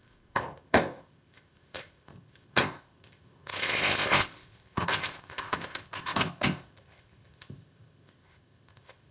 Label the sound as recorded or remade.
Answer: remade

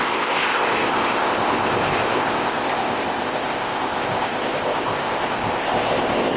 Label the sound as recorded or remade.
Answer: remade